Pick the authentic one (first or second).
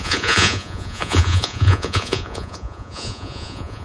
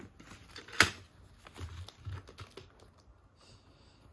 second